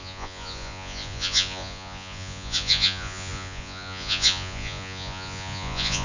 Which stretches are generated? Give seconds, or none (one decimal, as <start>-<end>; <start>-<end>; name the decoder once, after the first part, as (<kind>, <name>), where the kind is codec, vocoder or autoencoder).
0.0-6.0 (vocoder, Vocos)